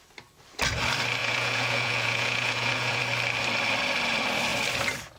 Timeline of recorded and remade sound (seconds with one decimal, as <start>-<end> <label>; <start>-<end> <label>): 0.0-1.2 recorded; 1.2-3.0 remade; 3.0-5.2 recorded